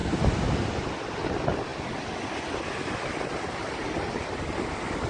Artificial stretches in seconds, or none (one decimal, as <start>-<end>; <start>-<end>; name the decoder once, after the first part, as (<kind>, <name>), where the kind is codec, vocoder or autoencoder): none